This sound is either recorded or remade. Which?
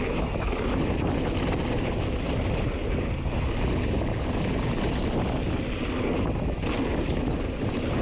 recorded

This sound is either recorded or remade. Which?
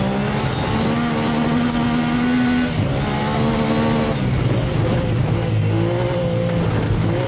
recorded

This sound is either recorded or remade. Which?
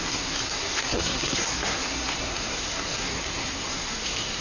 remade